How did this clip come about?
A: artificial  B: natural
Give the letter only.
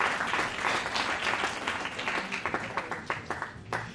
B